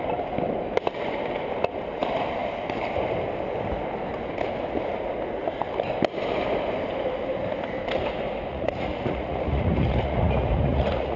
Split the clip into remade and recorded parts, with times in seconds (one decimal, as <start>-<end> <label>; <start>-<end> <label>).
0.0-8.5 recorded; 8.5-11.2 remade